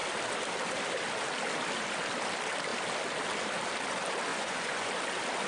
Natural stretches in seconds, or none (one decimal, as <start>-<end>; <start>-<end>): 0.0-4.3; 4.9-5.5